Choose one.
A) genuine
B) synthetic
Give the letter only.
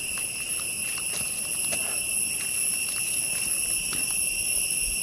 A